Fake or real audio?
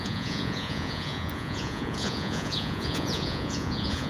fake